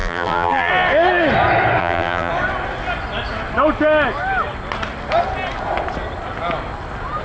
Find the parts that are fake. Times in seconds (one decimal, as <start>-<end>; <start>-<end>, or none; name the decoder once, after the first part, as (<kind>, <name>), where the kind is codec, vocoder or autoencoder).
0.0-0.7 (vocoder, BigVGAN v2); 1.8-2.3